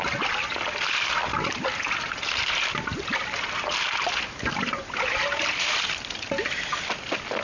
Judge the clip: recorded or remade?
recorded